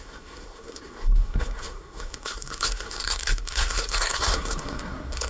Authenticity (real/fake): fake